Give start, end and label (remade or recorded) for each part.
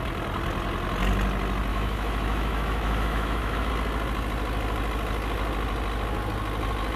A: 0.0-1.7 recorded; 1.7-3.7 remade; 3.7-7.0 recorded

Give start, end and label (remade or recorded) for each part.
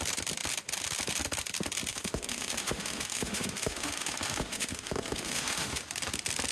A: 0.0-1.9 recorded; 1.9-5.8 remade; 5.8-6.5 recorded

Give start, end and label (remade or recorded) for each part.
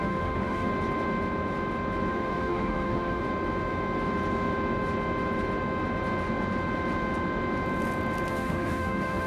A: 0.0-0.7 remade; 0.7-2.1 recorded; 2.1-3.2 remade; 3.2-8.3 recorded; 8.3-9.3 remade